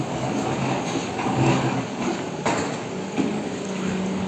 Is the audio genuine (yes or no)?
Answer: no